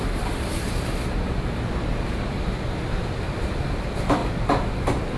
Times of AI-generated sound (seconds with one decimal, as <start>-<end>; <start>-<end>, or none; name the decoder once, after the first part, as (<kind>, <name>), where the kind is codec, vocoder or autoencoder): none